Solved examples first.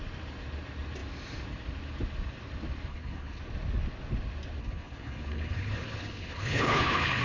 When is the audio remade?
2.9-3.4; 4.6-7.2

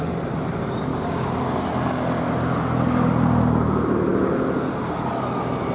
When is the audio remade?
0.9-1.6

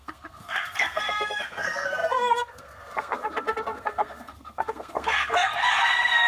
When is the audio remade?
0.0-6.3

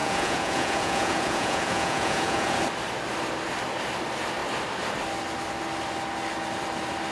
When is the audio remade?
0.0-2.6

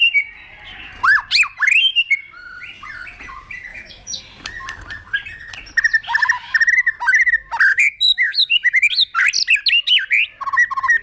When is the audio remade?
3.7-4.2; 7.7-8.9

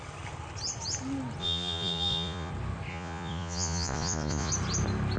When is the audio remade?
1.4-2.5; 2.9-4.5